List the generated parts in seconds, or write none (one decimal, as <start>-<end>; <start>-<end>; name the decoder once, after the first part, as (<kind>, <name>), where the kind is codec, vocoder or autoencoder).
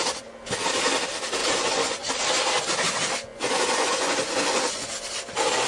1.4-2.1 (vocoder, Vocos); 3.3-4.9